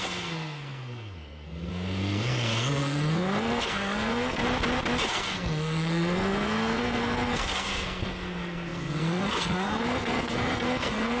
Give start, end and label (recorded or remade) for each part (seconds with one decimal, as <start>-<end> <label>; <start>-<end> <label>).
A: 0.0-4.4 remade; 4.4-5.1 recorded; 5.1-11.2 remade

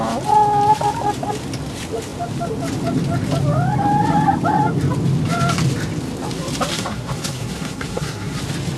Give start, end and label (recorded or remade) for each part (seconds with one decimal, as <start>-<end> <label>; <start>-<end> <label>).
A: 0.0-6.7 recorded; 6.7-8.4 remade; 8.4-8.8 recorded

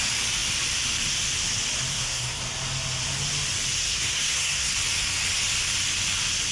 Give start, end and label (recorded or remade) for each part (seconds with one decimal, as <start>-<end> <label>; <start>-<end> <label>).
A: 0.0-1.9 recorded; 1.9-2.4 remade; 2.4-3.8 recorded; 3.8-4.7 remade; 4.7-6.5 recorded

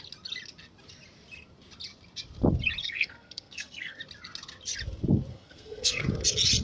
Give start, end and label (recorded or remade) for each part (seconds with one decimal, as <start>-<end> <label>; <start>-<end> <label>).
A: 0.0-2.8 recorded; 2.8-4.0 remade; 4.0-5.3 recorded; 5.3-6.0 remade; 6.0-6.6 recorded

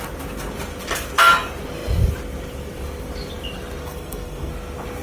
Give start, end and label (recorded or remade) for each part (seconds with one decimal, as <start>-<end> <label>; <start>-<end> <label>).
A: 0.0-3.8 recorded; 3.8-4.5 remade; 4.5-5.0 recorded

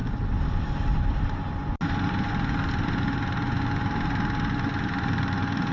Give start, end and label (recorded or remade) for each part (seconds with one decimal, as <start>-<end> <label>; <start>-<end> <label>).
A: 0.0-5.7 recorded

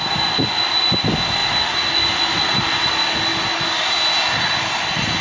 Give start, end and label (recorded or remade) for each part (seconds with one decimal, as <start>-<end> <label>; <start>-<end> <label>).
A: 0.0-5.2 recorded